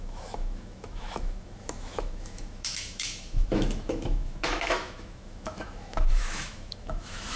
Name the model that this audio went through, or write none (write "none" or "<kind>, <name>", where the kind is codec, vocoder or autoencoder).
autoencoder, DAC-VAE